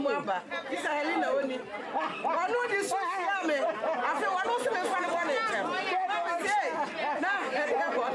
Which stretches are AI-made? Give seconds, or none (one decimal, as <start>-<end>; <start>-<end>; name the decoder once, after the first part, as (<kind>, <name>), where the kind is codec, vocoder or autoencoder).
none